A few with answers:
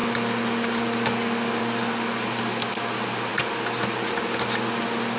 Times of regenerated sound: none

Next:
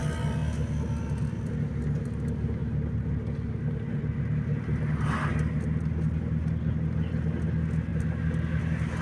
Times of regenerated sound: none

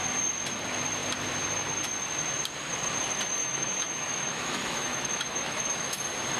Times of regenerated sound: 3.4-6.0 (autoencoder, DAC-VAE)

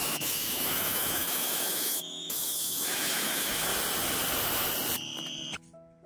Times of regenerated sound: 0.0-3.7 (autoencoder, DAC-VAE)

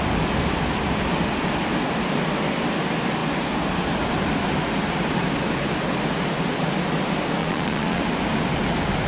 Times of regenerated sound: 7.4-8.0 (vocoder, Vocos)

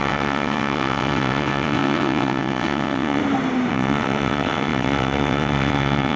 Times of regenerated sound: 0.0-3.2 (vocoder, WaveNeXt); 3.7-6.2

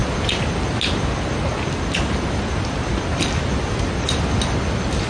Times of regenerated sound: none